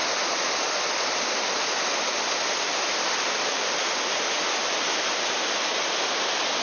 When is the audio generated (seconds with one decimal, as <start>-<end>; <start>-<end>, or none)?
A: none